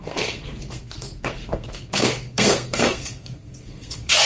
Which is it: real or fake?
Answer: fake